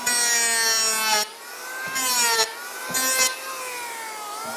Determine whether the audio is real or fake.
real